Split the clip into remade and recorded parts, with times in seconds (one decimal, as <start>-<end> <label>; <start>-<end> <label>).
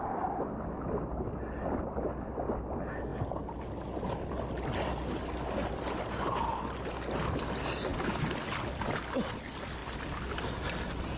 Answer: 0.0-11.2 recorded